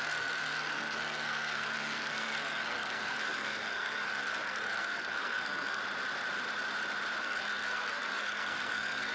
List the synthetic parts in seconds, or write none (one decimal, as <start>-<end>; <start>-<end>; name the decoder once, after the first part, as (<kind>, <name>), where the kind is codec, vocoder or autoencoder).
0.0-5.8 (codec, SNAC); 7.2-9.1